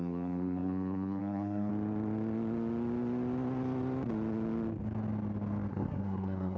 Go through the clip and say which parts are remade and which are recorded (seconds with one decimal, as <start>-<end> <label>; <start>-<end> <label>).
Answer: 0.0-1.7 remade; 1.7-5.7 recorded; 5.7-6.6 remade